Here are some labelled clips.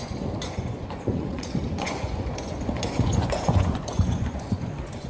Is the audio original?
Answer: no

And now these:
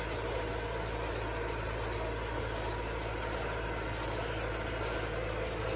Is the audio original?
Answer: yes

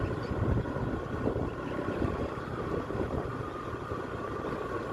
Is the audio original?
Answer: yes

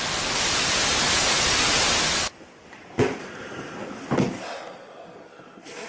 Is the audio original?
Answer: yes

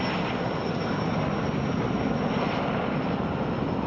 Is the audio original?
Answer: yes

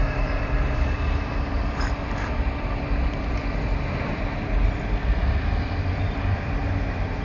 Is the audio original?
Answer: no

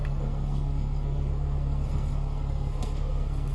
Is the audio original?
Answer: no